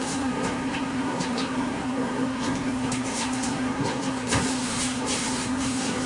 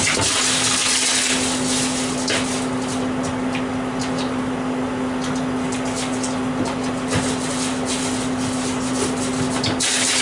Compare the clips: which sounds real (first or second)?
second